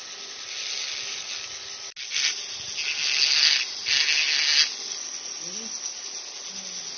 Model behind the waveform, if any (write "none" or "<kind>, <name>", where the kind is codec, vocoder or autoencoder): none